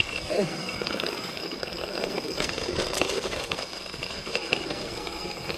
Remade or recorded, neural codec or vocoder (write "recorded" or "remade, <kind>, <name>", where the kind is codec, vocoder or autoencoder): remade, codec, SNAC